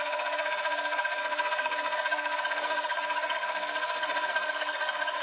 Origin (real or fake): fake